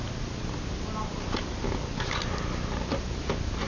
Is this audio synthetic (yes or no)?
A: no